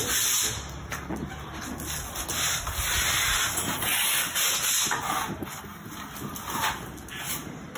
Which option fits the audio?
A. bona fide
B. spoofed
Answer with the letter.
A